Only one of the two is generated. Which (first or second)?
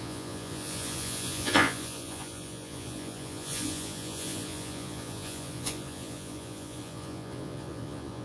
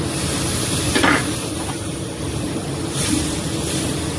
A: first